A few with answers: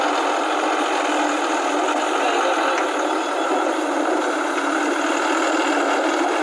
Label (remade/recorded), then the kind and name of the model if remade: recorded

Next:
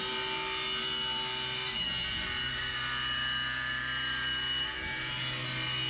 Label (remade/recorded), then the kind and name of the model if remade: recorded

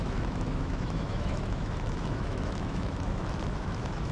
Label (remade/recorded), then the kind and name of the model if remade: remade, autoencoder, DAC-VAE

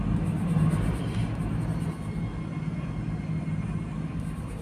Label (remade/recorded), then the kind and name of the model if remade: recorded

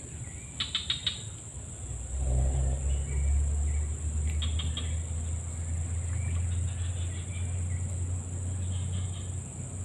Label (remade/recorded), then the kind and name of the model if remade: recorded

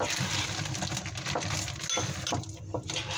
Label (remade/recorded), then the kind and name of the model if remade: recorded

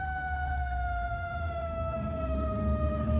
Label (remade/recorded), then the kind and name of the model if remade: remade, autoencoder, DAC-VAE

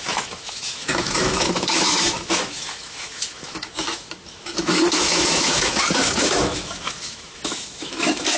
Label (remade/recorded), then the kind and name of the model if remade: remade, autoencoder, DAC-VAE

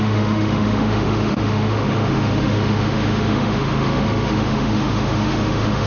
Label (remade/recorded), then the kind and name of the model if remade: remade, autoencoder, DAC-VAE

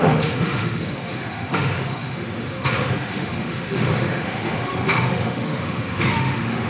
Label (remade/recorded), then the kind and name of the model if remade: remade, autoencoder, DAC-VAE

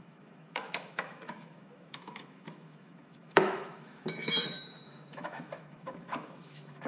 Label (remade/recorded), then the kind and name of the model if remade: remade, autoencoder, DAC-VAE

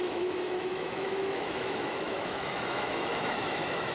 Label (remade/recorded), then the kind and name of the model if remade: remade, autoencoder, DAC-VAE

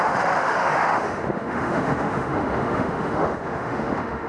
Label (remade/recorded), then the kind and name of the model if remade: remade, autoencoder, DAC-VAE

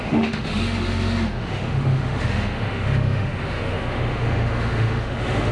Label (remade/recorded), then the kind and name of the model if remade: remade, autoencoder, DAC-VAE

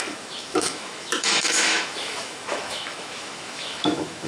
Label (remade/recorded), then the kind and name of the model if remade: remade, autoencoder, DAC-VAE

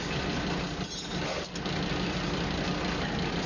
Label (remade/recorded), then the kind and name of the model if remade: recorded